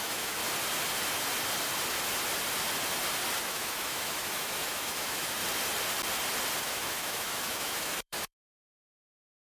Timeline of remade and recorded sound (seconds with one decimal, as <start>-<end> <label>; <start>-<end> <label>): 0.0-0.4 remade; 0.4-3.4 recorded; 3.4-5.4 remade; 5.4-6.6 recorded; 6.6-9.6 remade